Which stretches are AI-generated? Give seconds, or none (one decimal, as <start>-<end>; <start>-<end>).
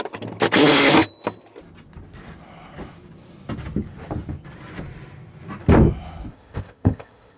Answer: 6.3-7.4